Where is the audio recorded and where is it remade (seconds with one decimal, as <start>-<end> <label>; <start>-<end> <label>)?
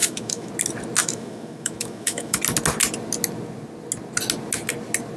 0.0-0.5 remade; 0.5-1.0 recorded; 1.0-2.4 remade; 2.4-5.2 recorded